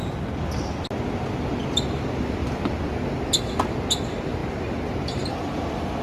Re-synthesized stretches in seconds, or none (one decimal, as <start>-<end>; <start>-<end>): none